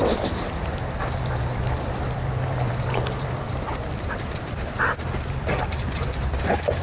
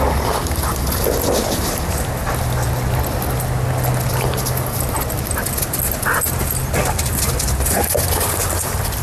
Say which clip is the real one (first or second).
second